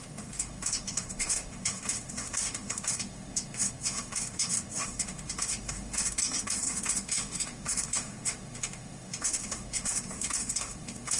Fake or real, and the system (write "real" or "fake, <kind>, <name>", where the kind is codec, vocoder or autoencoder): fake, autoencoder, DAC-VAE